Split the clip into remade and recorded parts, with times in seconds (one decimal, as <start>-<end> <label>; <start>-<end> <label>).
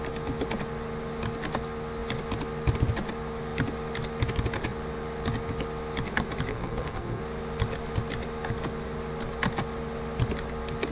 0.0-6.5 recorded; 6.5-7.2 remade; 7.2-10.9 recorded